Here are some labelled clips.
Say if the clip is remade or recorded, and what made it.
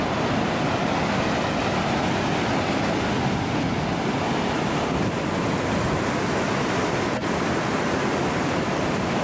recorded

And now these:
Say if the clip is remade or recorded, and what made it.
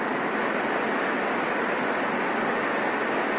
recorded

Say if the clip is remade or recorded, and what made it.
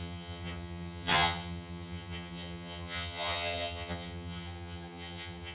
remade, vocoder, HiFi-GAN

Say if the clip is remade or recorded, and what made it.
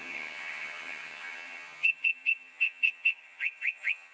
remade, vocoder, HiFi-GAN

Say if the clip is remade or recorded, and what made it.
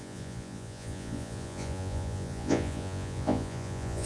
remade, vocoder, Vocos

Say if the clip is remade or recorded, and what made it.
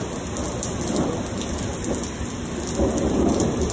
recorded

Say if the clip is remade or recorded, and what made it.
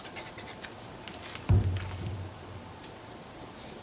recorded